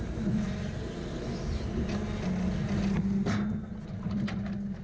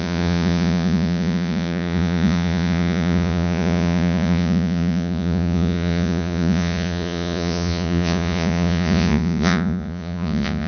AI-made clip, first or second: second